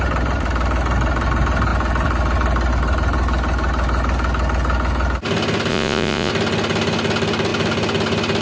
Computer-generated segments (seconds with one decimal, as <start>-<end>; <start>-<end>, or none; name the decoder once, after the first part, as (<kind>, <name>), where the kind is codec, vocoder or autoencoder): 5.7-6.3 (vocoder, Vocos)